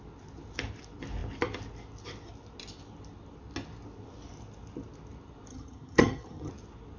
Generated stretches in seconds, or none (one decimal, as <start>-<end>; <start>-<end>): 5.5-6.5